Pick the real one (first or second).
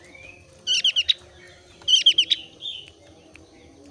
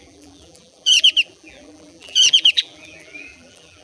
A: first